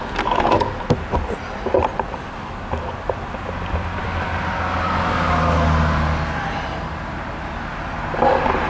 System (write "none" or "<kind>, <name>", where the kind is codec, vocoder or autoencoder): none